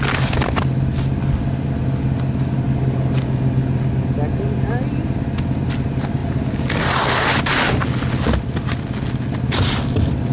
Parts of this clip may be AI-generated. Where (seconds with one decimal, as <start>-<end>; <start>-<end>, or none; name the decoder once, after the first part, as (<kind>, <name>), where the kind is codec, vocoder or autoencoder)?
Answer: none